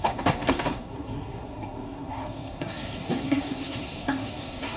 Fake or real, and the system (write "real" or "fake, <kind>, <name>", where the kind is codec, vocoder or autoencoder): fake, codec, SNAC